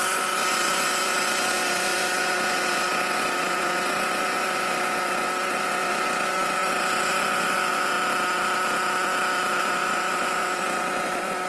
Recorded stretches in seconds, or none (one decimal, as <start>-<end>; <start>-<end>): 7.9-9.6